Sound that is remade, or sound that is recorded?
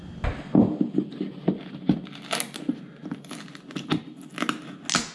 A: recorded